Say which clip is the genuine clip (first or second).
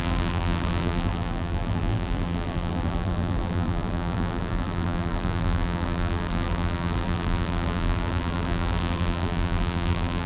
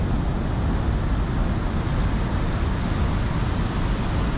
second